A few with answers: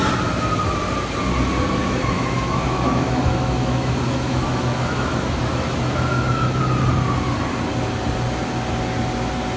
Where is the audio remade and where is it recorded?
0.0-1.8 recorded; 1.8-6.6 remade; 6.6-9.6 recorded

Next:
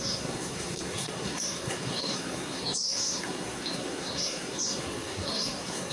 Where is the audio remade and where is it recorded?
0.0-5.9 remade

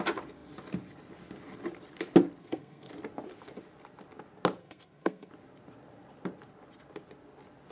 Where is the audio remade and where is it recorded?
0.0-2.4 recorded; 2.4-2.9 remade; 2.9-4.6 recorded; 4.6-5.3 remade; 5.3-7.7 recorded

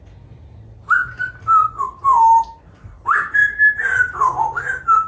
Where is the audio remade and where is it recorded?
0.0-5.1 recorded

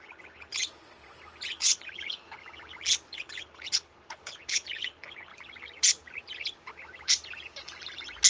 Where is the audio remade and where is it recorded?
0.0-0.5 remade; 0.5-1.5 recorded; 1.5-2.4 remade; 2.4-3.1 recorded; 3.1-5.3 remade; 5.3-8.3 recorded